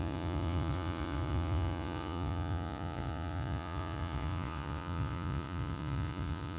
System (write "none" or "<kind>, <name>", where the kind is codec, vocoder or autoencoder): vocoder, Vocos